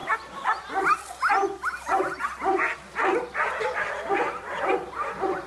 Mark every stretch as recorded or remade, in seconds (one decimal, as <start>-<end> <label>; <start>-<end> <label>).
0.0-3.3 recorded; 3.3-5.5 remade